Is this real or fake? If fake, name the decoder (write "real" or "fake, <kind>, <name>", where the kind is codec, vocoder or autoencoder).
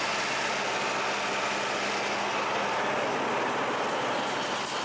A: real